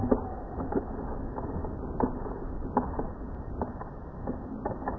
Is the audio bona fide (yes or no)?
yes